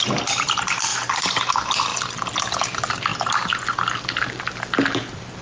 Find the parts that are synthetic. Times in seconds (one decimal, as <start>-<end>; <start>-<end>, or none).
none